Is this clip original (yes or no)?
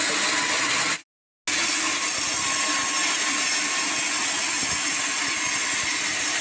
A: yes